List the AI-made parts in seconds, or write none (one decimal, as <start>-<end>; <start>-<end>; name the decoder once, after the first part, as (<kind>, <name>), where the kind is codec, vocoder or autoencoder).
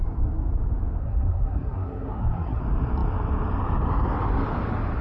1.0-2.6 (codec, SNAC)